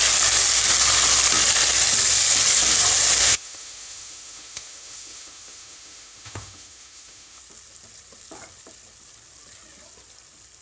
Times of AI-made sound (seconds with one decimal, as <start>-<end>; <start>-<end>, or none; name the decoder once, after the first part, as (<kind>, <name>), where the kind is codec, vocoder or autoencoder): 3.2-7.4 (autoencoder, DAC-VAE)